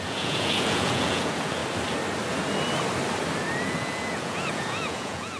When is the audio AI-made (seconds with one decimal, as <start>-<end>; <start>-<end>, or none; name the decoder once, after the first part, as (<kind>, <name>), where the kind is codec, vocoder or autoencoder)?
0.0-1.6 (vocoder, Vocos); 3.6-5.4